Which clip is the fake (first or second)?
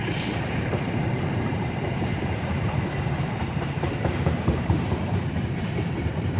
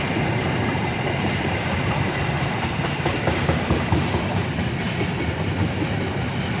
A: first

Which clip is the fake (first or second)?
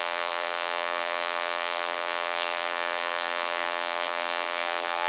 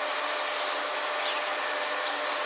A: first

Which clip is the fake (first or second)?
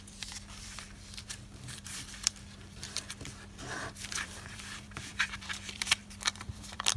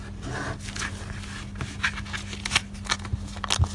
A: first